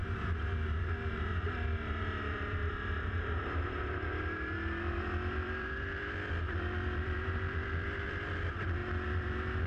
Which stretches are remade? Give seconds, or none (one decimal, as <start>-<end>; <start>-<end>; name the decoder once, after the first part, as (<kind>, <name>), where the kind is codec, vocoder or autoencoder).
2.2-9.7 (vocoder, BigVGAN v2)